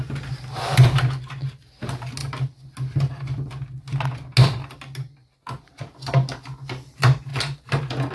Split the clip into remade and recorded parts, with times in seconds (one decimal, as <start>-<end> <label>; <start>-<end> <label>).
0.0-8.1 recorded

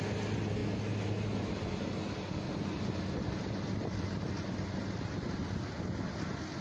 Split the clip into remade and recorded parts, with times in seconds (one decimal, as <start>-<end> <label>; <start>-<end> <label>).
0.0-6.6 recorded